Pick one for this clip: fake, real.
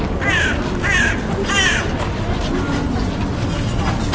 real